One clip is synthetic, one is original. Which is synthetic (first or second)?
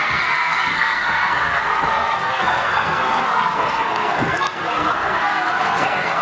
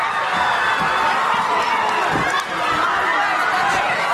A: first